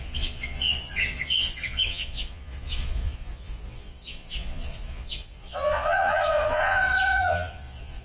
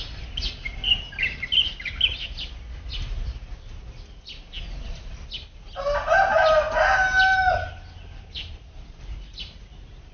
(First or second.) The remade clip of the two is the first